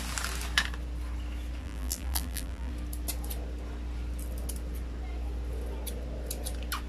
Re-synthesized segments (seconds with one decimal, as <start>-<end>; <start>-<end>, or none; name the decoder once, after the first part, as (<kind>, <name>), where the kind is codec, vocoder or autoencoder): 1.6-2.7 (vocoder, BigVGAN v2)